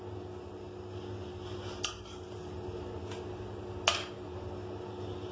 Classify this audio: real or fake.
real